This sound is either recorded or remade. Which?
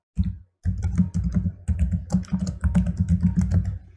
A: recorded